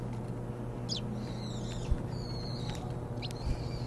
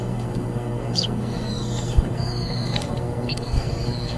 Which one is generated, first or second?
second